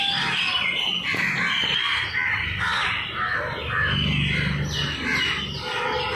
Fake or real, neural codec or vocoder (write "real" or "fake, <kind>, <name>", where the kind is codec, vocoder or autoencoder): real